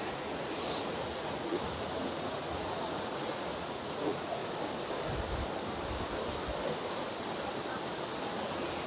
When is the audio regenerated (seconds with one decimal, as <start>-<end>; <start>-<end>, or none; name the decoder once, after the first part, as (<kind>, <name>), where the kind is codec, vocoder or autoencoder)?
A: 0.0-4.4 (vocoder, Vocos); 8.4-8.9